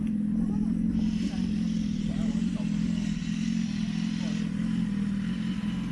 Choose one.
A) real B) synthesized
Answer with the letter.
A